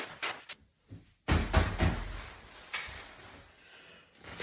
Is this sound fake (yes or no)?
no